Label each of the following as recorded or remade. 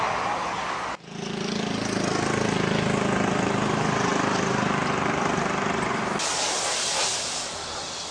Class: recorded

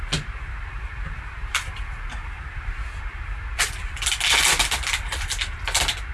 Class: recorded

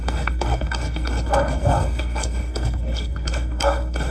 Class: remade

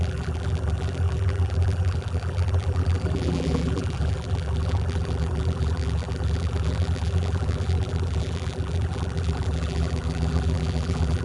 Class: remade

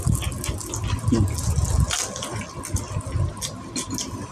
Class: recorded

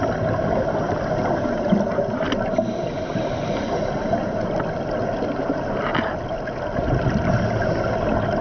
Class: recorded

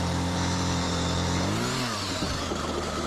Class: remade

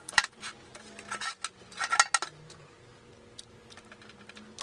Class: recorded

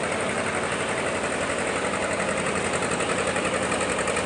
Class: recorded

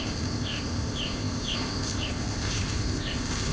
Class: remade